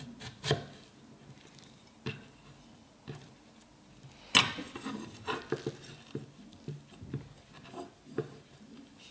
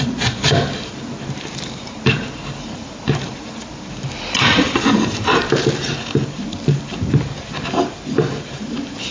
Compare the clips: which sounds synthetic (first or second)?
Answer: second